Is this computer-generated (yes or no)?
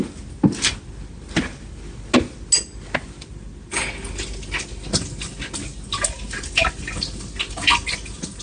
no